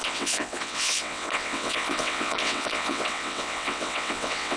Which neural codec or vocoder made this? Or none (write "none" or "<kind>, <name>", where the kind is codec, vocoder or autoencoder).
vocoder, WaveNeXt